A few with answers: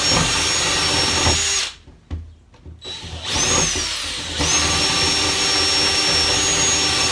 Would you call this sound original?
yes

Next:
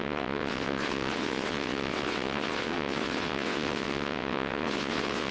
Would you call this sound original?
no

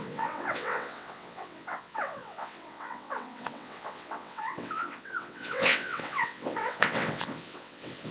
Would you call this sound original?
no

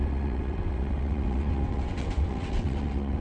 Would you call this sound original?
no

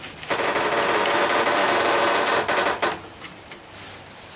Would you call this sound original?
yes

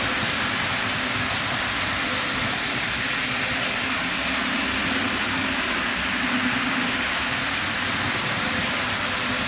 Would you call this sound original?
yes